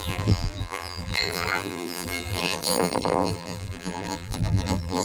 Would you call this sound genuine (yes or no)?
no